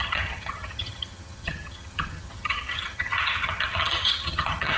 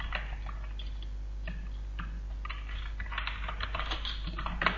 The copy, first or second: first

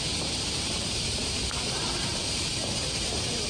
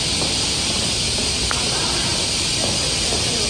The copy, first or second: first